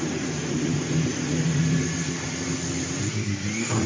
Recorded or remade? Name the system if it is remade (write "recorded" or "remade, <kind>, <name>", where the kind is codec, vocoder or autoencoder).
recorded